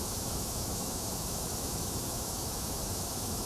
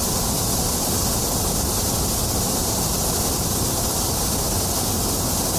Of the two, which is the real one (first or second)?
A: second